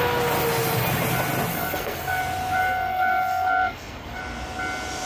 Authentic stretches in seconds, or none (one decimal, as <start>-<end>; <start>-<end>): 0.0-1.5; 2.2-2.6; 4.2-5.1

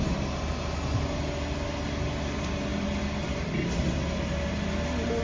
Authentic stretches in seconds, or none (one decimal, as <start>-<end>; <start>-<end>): 0.0-5.2